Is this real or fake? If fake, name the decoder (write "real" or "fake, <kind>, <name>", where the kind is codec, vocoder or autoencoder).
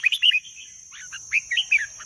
real